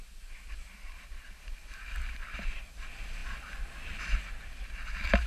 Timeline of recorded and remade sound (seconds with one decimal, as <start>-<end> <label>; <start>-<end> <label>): 0.0-5.3 recorded